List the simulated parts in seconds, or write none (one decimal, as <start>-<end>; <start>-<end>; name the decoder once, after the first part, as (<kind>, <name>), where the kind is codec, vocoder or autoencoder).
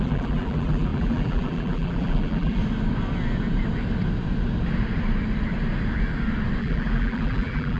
0.0-2.6 (vocoder, BigVGAN v2); 6.6-7.8